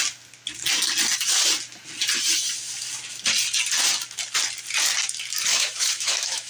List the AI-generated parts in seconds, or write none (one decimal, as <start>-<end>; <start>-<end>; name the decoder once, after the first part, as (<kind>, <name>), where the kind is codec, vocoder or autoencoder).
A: 5.5-6.5 (autoencoder, DAC-VAE)